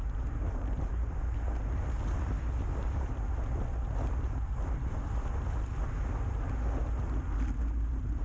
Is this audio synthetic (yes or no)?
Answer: no